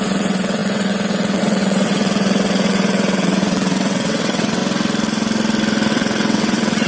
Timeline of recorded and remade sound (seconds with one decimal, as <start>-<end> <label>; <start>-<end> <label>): 0.0-4.6 remade; 4.6-5.9 recorded; 5.9-6.9 remade